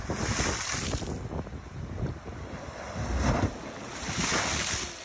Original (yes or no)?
yes